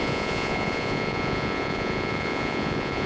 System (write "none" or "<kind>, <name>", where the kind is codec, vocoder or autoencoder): vocoder, Vocos